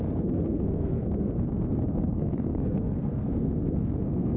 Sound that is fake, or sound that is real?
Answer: fake